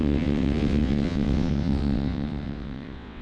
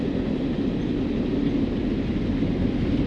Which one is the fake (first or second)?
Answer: first